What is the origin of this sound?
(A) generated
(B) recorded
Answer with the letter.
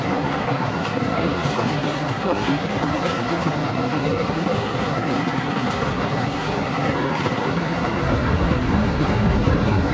A